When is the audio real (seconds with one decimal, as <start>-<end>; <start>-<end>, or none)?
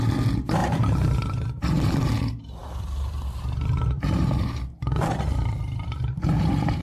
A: 0.0-0.6; 2.1-2.6